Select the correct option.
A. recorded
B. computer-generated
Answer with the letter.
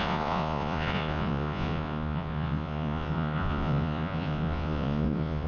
B